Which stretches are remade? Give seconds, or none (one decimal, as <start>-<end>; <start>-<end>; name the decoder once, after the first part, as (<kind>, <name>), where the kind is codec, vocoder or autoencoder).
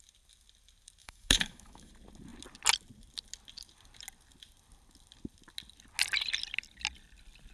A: 1.0-1.9 (autoencoder, DAC-VAE)